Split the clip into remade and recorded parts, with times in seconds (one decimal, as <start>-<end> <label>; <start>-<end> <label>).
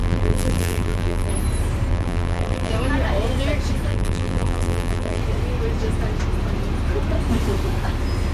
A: 0.0-1.3 remade; 1.3-1.9 recorded; 1.9-2.7 remade; 2.7-3.9 recorded; 3.9-5.2 remade; 5.2-8.3 recorded